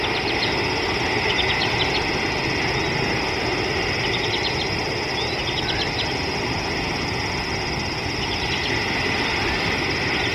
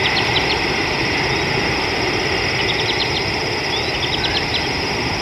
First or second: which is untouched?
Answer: first